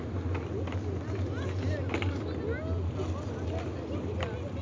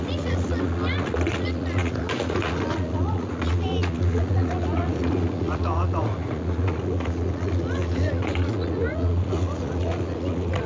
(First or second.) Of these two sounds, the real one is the first